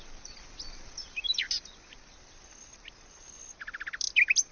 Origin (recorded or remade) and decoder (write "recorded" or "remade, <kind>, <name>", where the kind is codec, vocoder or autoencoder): recorded